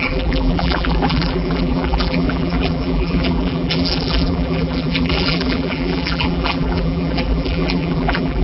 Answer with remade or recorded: remade